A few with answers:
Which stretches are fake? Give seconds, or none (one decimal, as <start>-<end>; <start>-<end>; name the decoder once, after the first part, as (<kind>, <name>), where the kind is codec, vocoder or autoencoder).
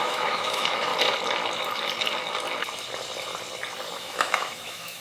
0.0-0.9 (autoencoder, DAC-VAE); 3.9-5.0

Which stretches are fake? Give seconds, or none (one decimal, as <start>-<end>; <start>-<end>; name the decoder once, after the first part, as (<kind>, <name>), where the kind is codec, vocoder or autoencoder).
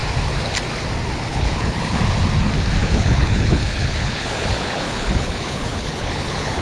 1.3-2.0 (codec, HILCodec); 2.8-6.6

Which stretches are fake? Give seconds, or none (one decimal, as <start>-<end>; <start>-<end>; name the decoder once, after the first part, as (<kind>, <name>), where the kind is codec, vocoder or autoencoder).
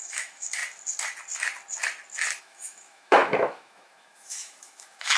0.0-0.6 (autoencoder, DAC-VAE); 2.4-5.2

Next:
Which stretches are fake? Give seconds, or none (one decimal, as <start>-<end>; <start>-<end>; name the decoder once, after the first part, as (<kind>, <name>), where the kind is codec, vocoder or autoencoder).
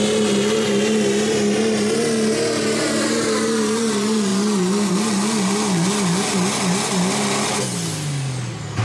none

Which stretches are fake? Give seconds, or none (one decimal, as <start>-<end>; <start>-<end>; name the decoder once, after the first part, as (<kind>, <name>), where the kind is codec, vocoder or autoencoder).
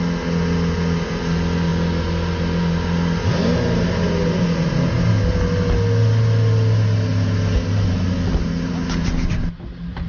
none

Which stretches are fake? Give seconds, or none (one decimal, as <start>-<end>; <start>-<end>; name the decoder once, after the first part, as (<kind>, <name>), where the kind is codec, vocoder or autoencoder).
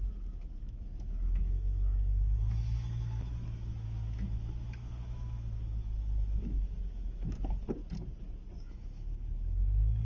0.0-7.8 (autoencoder, DAC-VAE); 8.6-10.1